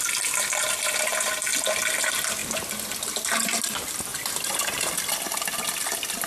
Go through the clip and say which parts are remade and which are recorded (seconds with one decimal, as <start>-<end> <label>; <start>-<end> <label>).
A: 0.0-1.5 remade; 1.5-2.0 recorded; 2.0-2.4 remade; 2.4-3.6 recorded; 3.6-4.1 remade; 4.1-6.3 recorded